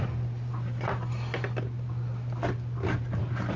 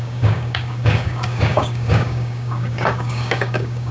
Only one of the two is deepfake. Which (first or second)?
second